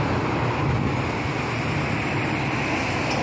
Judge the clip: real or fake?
real